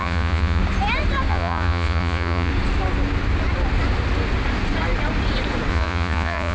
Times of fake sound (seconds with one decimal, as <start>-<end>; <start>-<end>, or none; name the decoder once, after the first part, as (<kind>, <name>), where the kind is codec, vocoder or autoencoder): 0.0-0.6 (vocoder, Vocos); 1.3-2.5; 5.7-6.5